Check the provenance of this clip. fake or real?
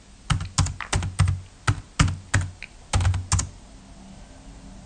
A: real